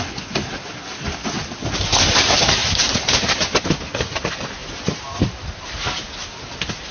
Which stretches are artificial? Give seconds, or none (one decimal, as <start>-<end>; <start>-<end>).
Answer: none